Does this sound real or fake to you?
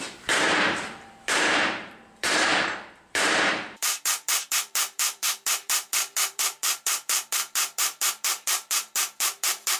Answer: fake